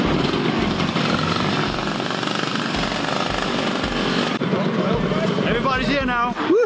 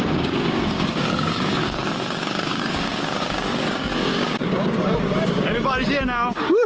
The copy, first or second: second